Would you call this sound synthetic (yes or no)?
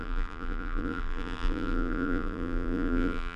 yes